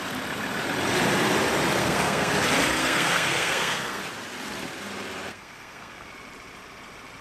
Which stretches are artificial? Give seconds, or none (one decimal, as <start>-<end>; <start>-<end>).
1.8-2.3; 2.8-4.0; 5.3-6.1